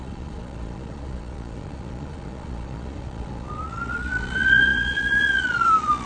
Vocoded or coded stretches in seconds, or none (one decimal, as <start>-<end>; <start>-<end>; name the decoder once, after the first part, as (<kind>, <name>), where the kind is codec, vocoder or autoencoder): 0.0-6.1 (vocoder, Vocos)